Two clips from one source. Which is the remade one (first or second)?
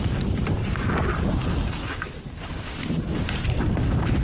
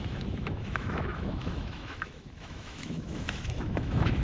second